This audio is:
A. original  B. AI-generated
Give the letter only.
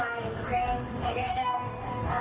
B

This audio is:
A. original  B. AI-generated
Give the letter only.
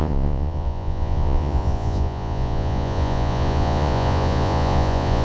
B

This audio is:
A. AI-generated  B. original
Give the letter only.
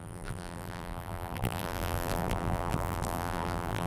A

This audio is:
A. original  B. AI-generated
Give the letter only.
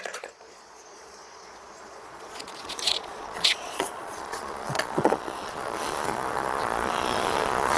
B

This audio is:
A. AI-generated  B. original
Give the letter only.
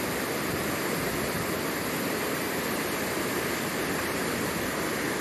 B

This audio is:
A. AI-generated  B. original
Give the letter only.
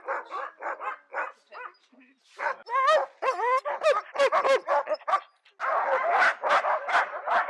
B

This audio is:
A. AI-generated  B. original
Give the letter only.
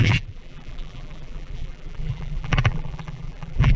A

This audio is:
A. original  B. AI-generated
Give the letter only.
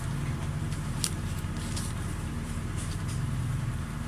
B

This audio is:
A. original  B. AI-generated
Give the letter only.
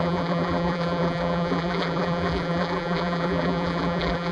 B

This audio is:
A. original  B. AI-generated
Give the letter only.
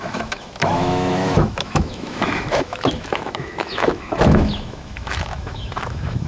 B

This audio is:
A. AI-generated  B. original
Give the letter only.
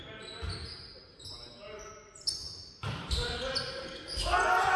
B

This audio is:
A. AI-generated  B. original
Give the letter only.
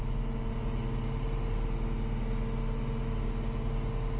B